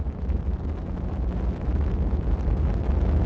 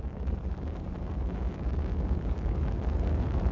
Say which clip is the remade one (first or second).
second